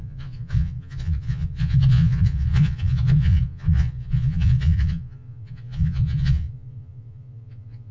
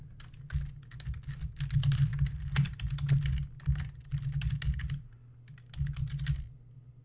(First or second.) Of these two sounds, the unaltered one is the second